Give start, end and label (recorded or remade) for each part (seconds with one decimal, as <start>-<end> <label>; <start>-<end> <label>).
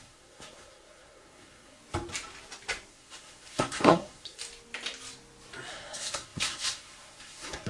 0.0-1.8 remade; 1.8-2.9 recorded; 2.9-4.4 remade; 4.4-5.7 recorded; 5.7-7.7 remade